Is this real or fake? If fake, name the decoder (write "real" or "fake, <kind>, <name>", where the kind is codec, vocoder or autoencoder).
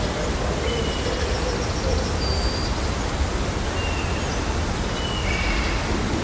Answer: real